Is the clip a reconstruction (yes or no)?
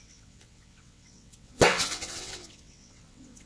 yes